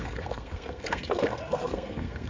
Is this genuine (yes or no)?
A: no